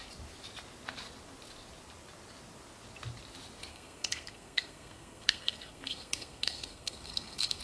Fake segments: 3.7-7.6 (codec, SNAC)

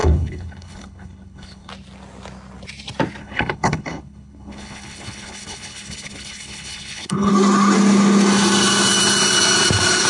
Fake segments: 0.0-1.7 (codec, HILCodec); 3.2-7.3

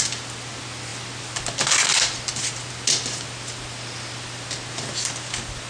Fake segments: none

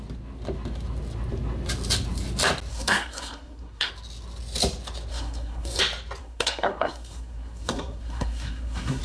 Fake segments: 2.7-3.9 (codec, SNAC); 5.1-5.8; 6.2-9.0

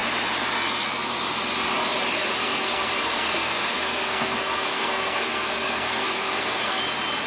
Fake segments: 2.4-6.8 (codec, SNAC)

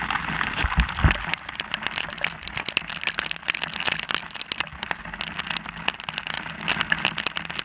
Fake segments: none